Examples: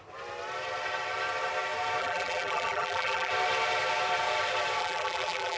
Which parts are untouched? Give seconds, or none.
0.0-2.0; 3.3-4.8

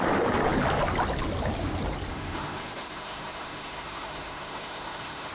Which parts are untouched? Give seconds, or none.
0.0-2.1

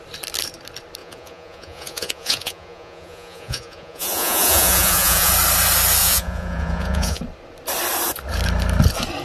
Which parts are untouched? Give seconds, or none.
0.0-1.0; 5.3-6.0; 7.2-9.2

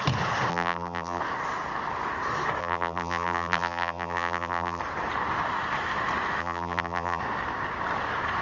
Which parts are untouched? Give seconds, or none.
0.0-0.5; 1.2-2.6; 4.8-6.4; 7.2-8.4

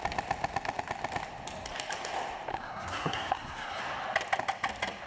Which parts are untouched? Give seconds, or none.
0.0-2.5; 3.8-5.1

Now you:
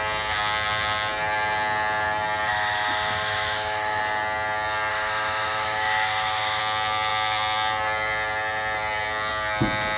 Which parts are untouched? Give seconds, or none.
0.0-2.5; 4.0-4.9; 6.6-10.0